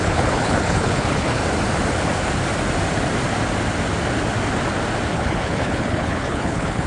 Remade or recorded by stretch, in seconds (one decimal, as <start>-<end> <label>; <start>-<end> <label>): 0.0-1.4 remade; 1.4-5.1 recorded; 5.1-6.9 remade